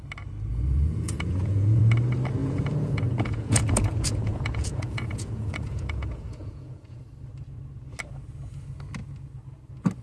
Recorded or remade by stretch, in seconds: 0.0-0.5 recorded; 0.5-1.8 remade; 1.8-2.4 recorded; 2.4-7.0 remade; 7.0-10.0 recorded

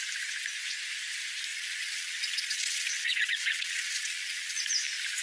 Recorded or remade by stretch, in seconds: 0.0-1.5 recorded; 1.5-4.6 remade; 4.6-5.2 recorded

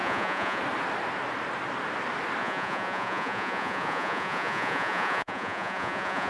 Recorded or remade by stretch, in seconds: 0.0-0.6 remade; 0.6-2.4 recorded; 2.4-6.3 remade